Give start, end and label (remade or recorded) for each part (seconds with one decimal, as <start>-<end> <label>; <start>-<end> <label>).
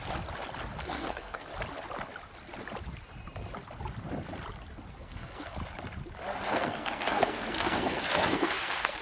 0.0-0.8 recorded; 0.8-1.5 remade; 1.5-4.9 recorded; 4.9-5.6 remade; 5.6-6.5 recorded; 6.5-9.0 remade